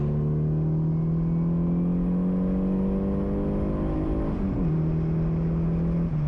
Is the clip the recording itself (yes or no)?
yes